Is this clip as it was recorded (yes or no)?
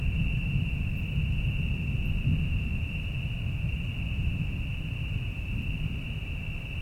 yes